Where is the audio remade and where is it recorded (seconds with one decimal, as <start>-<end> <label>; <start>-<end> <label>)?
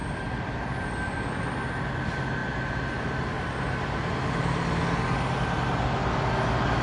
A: 0.0-6.8 recorded